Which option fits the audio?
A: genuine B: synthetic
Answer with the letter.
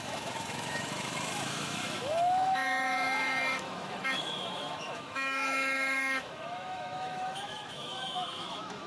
B